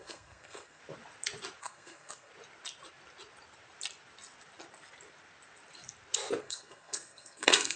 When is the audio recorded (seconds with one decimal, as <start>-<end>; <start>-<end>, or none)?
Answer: 0.8-1.6; 2.3-6.4